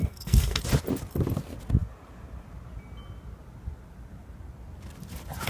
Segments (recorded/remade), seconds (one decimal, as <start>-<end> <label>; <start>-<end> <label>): 0.0-0.6 remade; 0.6-5.5 recorded

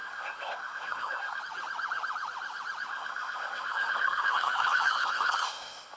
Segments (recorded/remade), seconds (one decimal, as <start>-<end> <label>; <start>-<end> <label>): 0.0-1.4 remade; 1.4-2.9 recorded; 2.9-6.0 remade

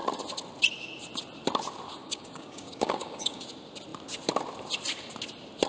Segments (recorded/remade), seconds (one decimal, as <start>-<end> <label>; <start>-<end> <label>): 0.0-2.0 recorded; 2.0-3.4 remade; 3.4-5.7 recorded

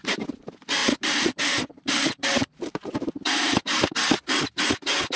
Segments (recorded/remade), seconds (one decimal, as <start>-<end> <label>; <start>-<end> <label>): 0.0-0.8 recorded; 0.8-3.9 remade; 3.9-5.2 recorded

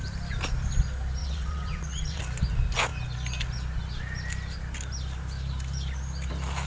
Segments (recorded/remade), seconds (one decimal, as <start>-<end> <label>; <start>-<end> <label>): 0.0-1.2 recorded; 1.2-2.2 remade; 2.2-6.7 recorded